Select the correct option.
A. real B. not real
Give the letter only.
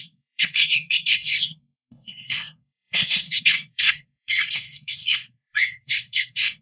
B